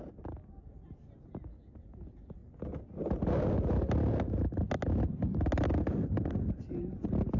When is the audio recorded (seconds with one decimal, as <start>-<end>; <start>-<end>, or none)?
0.0-7.4

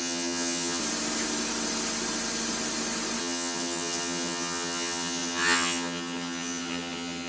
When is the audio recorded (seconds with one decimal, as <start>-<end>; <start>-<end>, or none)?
0.8-3.2

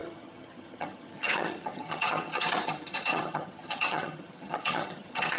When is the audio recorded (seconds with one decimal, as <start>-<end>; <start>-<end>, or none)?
none

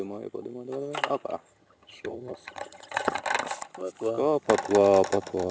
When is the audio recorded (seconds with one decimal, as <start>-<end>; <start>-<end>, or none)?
0.0-1.5; 3.2-5.5

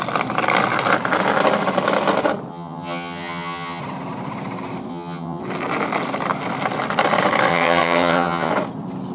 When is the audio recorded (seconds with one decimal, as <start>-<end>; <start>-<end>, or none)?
0.0-2.5; 3.8-4.9; 5.4-7.5; 8.5-9.1

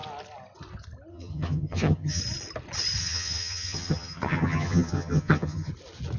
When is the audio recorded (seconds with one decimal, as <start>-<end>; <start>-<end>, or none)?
0.0-1.1; 2.2-3.0; 5.7-6.2

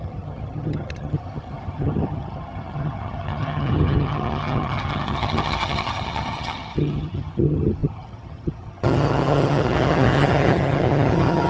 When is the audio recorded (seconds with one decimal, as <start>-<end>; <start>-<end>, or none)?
none